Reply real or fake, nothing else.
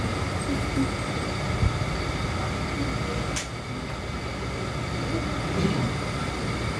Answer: real